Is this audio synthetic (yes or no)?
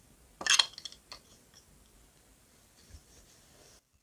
no